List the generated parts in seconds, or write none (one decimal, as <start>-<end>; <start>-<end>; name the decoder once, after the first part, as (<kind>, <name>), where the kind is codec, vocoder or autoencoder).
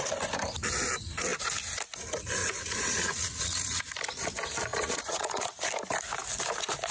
2.4-3.9 (vocoder, Vocos); 4.7-5.6